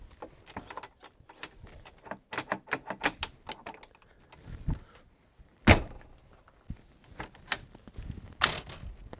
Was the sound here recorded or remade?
recorded